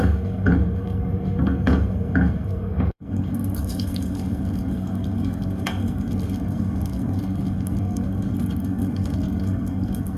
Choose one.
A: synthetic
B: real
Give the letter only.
A